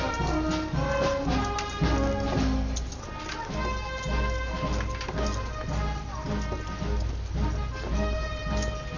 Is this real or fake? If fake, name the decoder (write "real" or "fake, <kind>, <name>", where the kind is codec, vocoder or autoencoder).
real